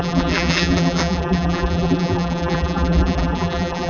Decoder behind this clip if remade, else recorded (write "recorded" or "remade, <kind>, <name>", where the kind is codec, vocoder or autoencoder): remade, vocoder, BigVGAN v2